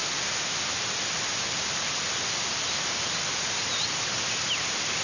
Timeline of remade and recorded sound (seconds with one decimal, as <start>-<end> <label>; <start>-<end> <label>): 0.0-5.0 recorded